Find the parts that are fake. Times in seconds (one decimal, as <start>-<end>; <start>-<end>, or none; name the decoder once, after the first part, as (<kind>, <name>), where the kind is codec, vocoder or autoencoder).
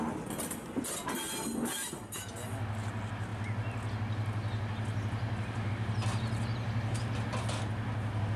none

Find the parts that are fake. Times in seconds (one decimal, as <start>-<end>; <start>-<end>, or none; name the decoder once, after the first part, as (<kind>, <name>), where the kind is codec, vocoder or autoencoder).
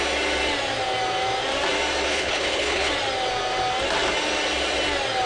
2.1-2.9 (codec, HILCodec)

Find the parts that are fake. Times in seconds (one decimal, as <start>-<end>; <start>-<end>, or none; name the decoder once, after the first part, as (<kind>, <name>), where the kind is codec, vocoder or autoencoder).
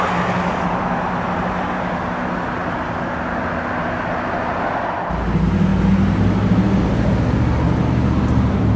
none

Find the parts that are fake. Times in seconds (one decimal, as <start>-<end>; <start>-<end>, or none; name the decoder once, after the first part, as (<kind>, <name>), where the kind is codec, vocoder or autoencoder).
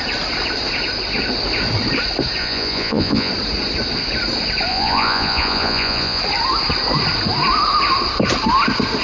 2.4-3.3 (vocoder, Vocos); 4.7-6.2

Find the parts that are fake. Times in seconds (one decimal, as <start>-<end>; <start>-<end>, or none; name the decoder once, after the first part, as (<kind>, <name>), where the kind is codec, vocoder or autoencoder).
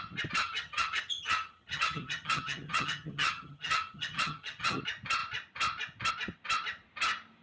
0.4-4.8 (vocoder, HiFi-GAN)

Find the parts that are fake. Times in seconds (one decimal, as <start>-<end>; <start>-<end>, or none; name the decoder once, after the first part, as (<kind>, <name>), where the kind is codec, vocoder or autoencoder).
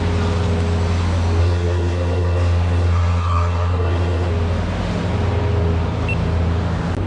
1.4-4.3 (codec, SNAC)